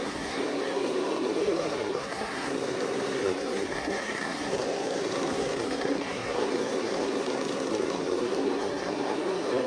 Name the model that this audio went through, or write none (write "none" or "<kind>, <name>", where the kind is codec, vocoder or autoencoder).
codec, SNAC